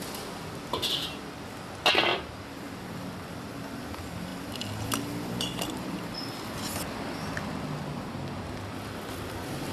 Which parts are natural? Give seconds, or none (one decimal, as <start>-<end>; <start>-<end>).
0.0-9.7